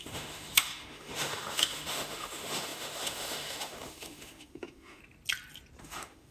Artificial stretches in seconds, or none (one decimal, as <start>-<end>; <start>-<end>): 0.0-5.0; 5.8-6.3